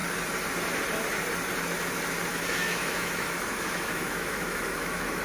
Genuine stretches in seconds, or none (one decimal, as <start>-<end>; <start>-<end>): 0.0-2.3